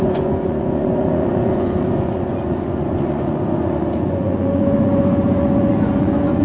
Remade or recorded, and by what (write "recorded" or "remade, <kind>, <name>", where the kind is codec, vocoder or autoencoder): remade, vocoder, Vocos